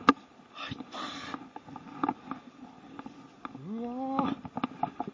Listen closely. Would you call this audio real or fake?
real